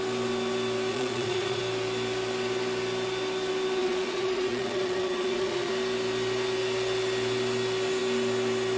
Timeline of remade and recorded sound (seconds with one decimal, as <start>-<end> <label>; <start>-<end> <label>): 0.0-0.9 recorded; 0.9-1.6 remade; 1.6-3.8 recorded; 3.8-5.7 remade; 5.7-8.8 recorded